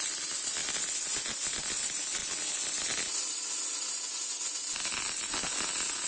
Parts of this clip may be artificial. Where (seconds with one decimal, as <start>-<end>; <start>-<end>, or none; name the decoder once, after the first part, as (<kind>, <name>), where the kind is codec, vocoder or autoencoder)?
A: none